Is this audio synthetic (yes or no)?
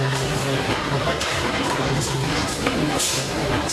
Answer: yes